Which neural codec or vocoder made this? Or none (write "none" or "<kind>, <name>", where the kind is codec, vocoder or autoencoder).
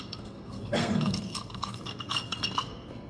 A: codec, SNAC